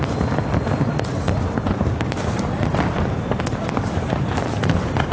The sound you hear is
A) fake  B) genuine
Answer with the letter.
B